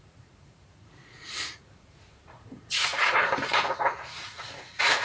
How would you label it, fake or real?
fake